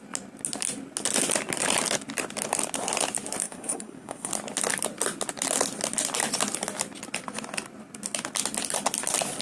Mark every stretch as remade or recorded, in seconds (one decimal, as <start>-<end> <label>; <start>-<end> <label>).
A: 0.0-3.4 recorded; 3.4-4.3 remade; 4.3-9.4 recorded